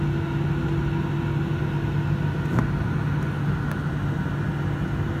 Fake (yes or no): no